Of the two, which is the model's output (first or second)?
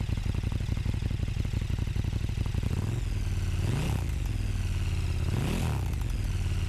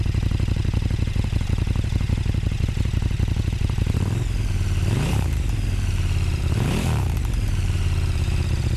second